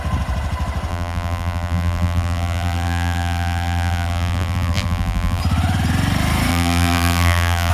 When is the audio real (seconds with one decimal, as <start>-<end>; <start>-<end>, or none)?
0.0-0.9; 5.4-6.5